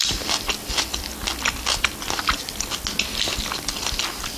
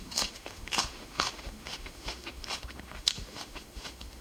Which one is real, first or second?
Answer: first